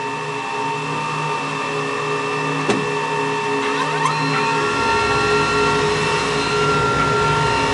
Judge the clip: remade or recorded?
recorded